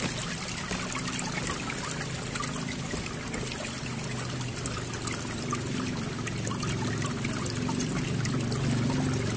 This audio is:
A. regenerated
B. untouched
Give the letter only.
B